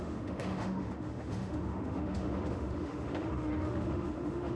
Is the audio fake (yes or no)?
yes